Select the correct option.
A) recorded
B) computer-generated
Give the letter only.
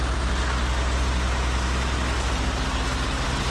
A